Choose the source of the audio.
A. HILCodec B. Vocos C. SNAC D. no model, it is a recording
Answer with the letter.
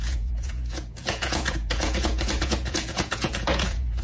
B